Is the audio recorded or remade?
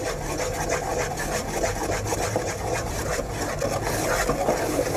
recorded